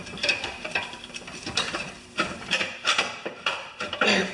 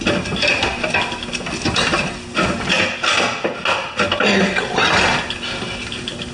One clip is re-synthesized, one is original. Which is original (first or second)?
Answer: second